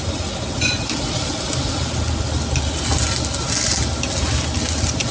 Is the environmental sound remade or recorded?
recorded